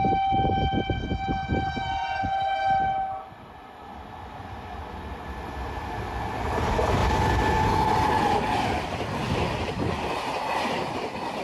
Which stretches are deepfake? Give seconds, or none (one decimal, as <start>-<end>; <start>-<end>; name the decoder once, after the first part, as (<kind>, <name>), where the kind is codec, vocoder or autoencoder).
none